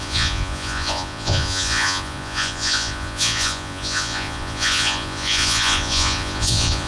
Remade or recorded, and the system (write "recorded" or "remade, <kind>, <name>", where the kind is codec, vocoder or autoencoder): remade, vocoder, Vocos